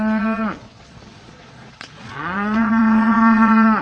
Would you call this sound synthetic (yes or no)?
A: yes